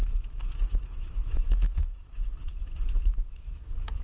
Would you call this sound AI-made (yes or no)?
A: yes